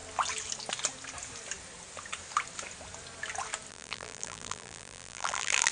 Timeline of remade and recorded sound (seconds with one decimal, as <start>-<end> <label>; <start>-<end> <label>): 0.0-3.7 recorded; 3.7-5.7 remade